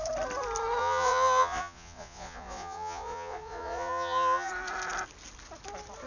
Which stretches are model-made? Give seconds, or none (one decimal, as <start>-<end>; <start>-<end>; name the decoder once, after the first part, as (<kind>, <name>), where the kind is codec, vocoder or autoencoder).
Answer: 0.8-4.5 (vocoder, Vocos)